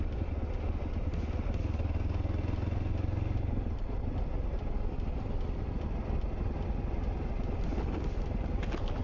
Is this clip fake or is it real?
real